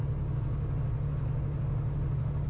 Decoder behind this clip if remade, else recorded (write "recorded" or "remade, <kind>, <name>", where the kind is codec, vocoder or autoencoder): recorded